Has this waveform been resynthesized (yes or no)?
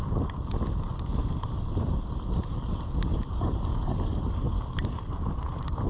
no